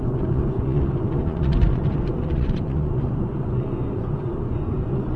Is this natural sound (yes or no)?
no